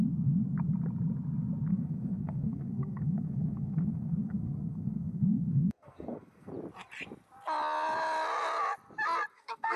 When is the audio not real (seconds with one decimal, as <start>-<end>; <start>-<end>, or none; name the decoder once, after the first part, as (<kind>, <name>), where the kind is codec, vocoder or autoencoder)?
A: 1.7-6.5 (codec, SNAC); 9.3-9.8